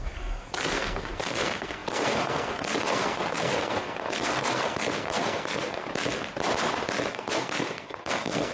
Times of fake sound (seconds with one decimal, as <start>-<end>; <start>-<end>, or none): 0.0-5.9; 7.1-8.5